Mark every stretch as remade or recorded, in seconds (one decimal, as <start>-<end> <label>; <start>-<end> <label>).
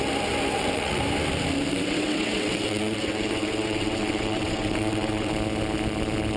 0.0-0.5 recorded; 0.5-1.0 remade; 1.0-1.7 recorded; 1.7-5.3 remade; 5.3-6.4 recorded